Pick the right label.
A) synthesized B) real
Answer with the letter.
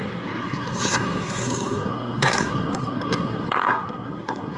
A